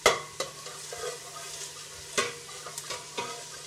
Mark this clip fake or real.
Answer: real